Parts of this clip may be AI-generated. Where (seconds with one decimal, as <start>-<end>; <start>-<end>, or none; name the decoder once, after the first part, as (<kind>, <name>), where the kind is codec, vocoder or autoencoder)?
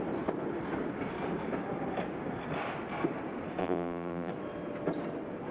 3.6-4.3 (vocoder, BigVGAN v2)